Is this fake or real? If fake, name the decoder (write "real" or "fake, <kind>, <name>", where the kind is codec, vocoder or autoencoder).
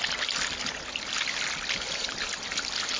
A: real